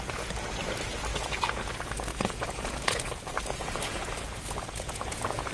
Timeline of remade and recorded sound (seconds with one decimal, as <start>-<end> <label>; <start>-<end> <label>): 0.0-1.1 recorded; 1.1-1.7 remade; 1.7-2.1 recorded; 2.1-5.5 remade